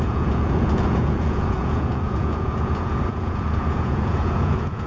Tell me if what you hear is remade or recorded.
remade